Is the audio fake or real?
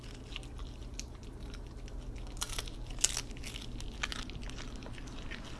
real